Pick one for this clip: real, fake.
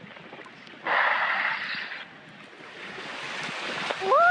real